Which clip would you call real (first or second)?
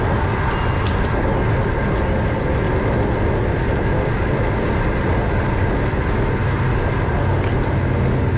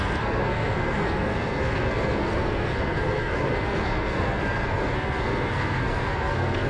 first